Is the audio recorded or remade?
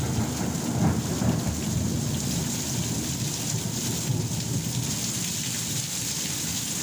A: recorded